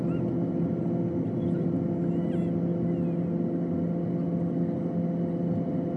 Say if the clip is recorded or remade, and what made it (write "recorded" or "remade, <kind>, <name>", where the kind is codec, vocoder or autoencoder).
recorded